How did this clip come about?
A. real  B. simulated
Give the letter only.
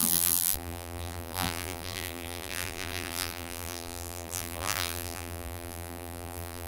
B